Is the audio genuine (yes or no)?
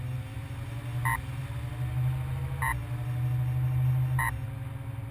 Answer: yes